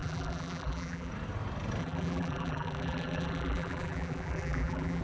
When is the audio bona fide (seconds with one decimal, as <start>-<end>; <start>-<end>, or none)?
1.1-1.8